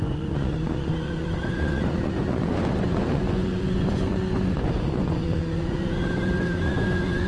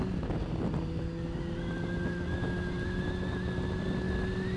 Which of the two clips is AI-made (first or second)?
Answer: first